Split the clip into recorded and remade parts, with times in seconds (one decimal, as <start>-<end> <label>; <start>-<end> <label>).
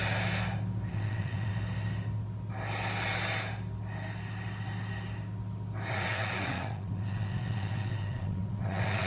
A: 0.0-0.9 recorded; 0.9-1.5 remade; 1.5-5.9 recorded; 5.9-9.1 remade